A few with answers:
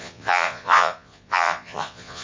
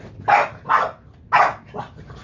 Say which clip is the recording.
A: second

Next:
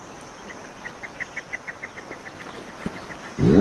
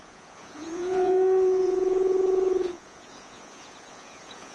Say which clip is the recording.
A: first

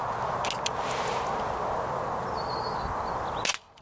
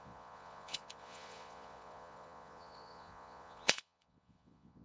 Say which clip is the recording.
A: first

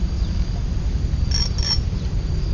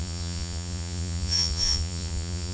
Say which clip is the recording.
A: first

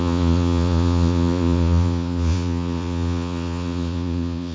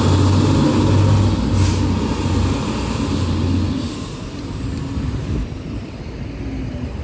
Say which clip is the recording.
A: second